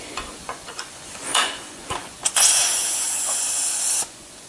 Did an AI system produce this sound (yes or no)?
yes